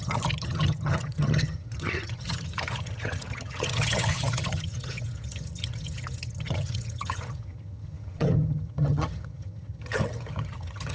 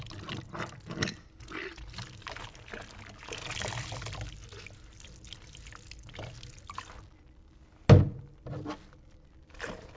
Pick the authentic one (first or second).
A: second